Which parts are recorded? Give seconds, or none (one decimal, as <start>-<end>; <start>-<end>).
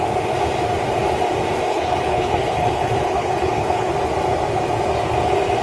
0.0-1.7; 3.9-5.6